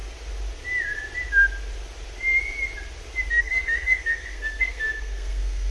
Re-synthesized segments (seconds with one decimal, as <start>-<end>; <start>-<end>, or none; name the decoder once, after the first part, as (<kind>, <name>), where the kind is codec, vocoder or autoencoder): 3.4-5.7 (codec, SNAC)